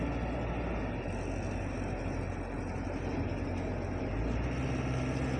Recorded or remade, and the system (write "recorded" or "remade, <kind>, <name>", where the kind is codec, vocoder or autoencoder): recorded